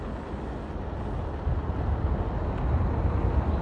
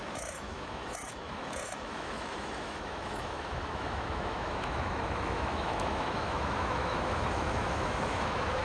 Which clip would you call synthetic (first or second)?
second